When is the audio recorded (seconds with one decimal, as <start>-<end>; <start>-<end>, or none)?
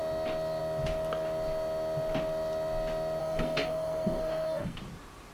0.0-3.2; 4.8-5.3